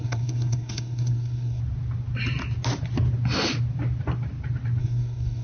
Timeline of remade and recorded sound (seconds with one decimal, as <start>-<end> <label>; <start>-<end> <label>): 0.0-1.6 remade; 1.6-4.8 recorded; 4.8-5.4 remade